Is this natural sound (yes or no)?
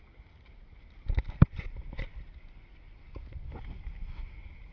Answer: yes